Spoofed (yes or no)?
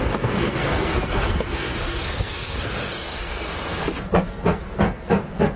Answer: yes